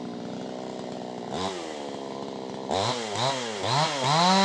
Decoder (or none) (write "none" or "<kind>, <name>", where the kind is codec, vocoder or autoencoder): none